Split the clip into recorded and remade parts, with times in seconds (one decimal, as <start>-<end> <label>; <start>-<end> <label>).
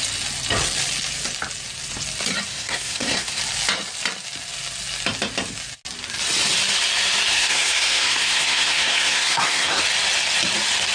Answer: 0.0-2.5 recorded; 2.5-3.4 remade; 3.4-7.3 recorded; 7.3-9.8 remade; 9.8-10.9 recorded